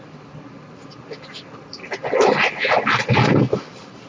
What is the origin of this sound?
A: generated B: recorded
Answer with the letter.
B